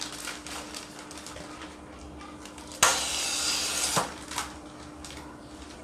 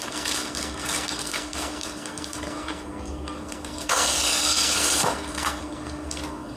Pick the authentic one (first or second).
first